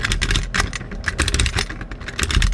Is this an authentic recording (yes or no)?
yes